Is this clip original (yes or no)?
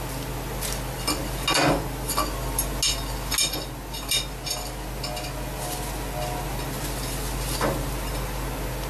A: yes